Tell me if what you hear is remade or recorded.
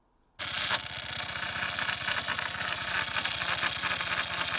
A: recorded